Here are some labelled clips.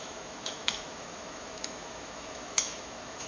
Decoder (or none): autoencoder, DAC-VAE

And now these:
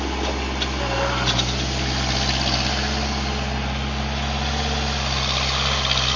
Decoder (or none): none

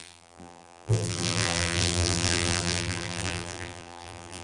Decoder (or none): vocoder, BigVGAN v2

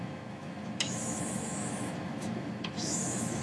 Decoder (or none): autoencoder, DAC-VAE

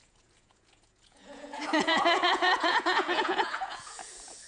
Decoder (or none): vocoder, Vocos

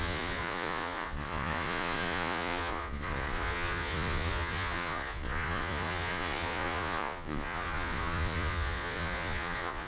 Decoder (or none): vocoder, Vocos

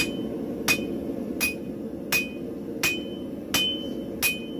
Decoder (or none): none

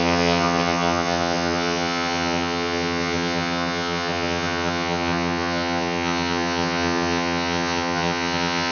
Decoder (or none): vocoder, HiFi-GAN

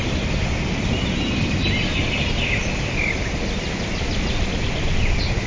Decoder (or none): none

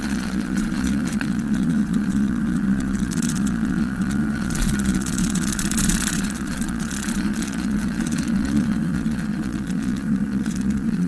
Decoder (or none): vocoder, Vocos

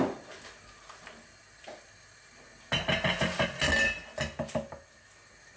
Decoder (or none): none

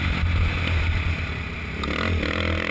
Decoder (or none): none